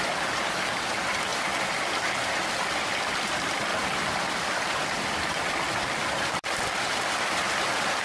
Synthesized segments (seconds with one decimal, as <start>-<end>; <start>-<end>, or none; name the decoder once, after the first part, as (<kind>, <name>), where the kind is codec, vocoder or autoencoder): 1.3-1.9 (vocoder, BigVGAN v2); 3.7-7.2

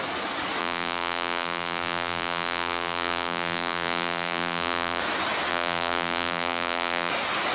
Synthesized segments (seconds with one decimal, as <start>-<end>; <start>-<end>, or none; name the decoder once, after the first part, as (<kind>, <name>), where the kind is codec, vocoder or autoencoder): 0.6-5.0 (vocoder, BigVGAN v2); 5.5-7.1

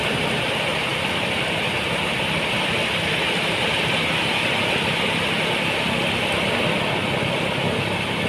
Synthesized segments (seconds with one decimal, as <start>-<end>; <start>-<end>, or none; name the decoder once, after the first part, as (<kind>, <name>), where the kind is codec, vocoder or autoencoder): none

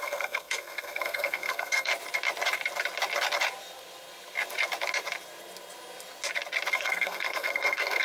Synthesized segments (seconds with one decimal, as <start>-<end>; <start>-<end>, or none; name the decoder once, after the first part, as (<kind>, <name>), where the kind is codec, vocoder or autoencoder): 0.0-1.9 (codec, SNAC); 6.7-8.0

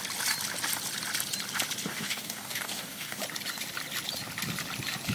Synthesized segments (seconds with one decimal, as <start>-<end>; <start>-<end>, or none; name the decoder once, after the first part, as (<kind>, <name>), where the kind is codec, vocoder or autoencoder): 1.9-3.2 (codec, DAC)

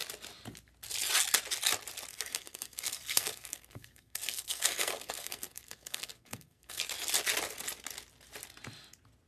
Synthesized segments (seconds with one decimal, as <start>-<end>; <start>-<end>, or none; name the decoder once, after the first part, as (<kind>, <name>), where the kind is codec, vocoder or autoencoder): 2.1-6.8 (codec, SNAC)

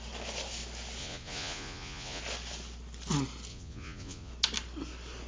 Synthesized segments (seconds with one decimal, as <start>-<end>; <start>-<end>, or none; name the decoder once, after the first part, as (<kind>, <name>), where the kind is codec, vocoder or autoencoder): 1.0-2.2 (vocoder, Vocos); 3.5-4.3